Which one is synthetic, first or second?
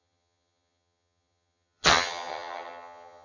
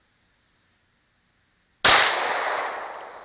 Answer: first